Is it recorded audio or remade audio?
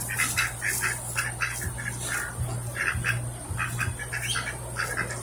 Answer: recorded